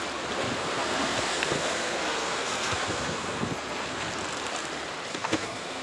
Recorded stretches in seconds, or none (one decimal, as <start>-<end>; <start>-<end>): 0.0-0.6; 4.1-5.1